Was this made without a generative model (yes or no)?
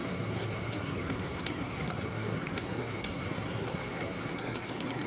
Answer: no